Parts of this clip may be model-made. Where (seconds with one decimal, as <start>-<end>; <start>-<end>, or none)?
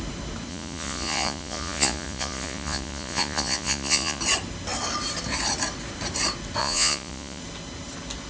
0.5-4.2; 6.6-7.4